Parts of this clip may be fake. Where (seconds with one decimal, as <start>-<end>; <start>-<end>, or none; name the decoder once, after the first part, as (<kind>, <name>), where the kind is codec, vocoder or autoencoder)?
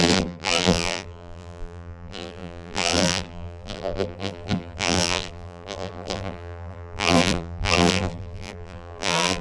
0.0-9.4 (vocoder, BigVGAN v2)